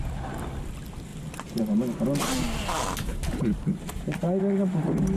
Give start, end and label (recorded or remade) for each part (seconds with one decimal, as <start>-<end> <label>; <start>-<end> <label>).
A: 0.0-3.1 recorded; 3.1-4.4 remade; 4.4-5.2 recorded